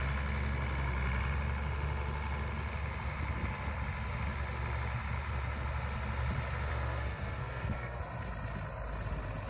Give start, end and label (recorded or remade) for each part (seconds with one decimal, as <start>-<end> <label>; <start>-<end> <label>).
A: 0.0-6.7 recorded; 6.7-8.0 remade; 8.0-9.5 recorded